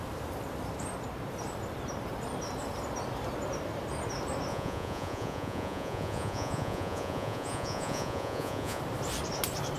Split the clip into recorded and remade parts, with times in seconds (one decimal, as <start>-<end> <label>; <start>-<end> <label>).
0.0-4.5 recorded; 4.5-8.8 remade; 8.8-9.8 recorded